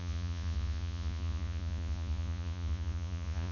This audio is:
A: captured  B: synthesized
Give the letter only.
B